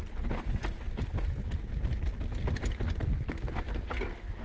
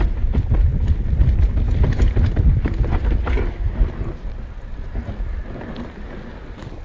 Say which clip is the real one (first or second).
first